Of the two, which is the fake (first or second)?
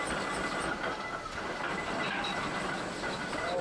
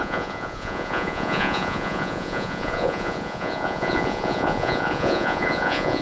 second